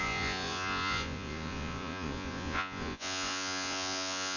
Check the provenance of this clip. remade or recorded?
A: remade